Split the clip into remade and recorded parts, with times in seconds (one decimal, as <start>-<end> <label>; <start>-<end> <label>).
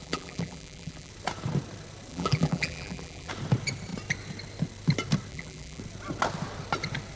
0.0-1.1 remade; 1.1-2.1 recorded; 2.1-3.3 remade; 3.3-5.3 recorded; 5.3-5.8 remade; 5.8-7.2 recorded